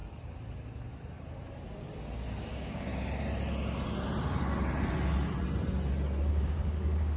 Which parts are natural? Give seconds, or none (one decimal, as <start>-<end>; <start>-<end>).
0.0-2.5; 2.9-6.3